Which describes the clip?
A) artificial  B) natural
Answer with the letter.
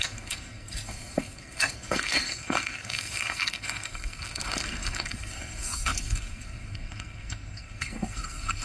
A